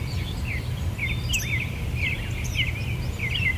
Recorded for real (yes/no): no